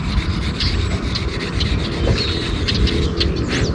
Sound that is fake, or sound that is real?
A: real